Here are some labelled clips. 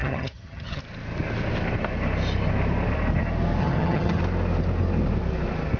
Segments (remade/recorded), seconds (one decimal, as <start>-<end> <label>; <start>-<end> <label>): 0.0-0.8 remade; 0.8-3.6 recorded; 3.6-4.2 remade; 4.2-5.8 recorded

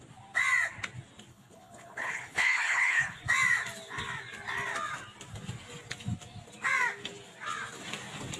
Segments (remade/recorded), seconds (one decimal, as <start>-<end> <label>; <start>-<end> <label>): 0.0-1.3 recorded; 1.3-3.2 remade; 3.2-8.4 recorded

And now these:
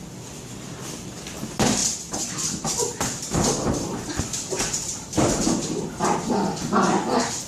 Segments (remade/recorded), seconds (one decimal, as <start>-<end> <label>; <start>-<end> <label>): 0.0-7.5 recorded

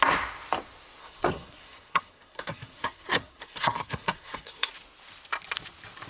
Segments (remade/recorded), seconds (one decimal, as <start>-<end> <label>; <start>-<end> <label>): 0.0-1.0 recorded; 1.0-4.7 remade; 4.7-6.1 recorded

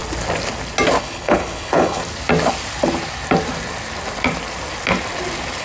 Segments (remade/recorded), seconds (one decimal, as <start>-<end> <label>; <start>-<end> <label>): 0.0-1.0 recorded; 1.0-2.0 remade; 2.0-5.6 recorded

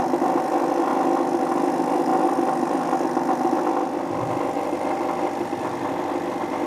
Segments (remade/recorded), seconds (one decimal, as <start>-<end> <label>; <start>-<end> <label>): 0.0-0.9 remade; 0.9-1.5 recorded; 1.5-6.7 remade

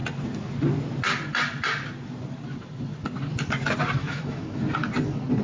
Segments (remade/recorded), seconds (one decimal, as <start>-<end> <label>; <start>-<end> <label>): 0.0-4.0 recorded; 4.0-4.6 remade; 4.6-5.4 recorded

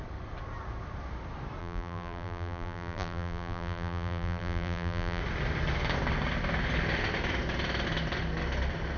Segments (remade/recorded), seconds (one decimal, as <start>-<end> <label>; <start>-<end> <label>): 0.0-1.6 recorded; 1.6-5.2 remade; 5.2-9.0 recorded